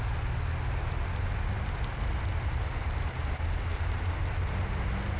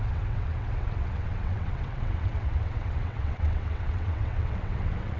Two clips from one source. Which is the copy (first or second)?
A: second